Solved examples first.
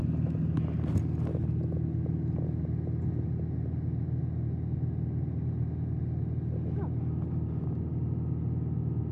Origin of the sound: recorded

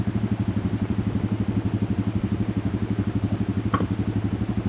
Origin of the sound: recorded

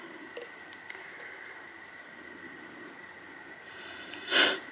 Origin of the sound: recorded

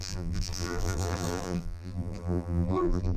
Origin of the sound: remade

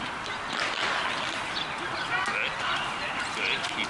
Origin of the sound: recorded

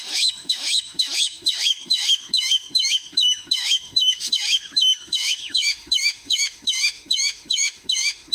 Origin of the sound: remade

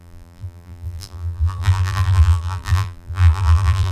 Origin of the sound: remade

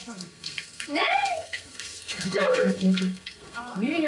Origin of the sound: remade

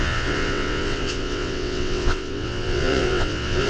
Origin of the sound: remade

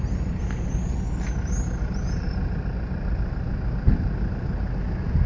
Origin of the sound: recorded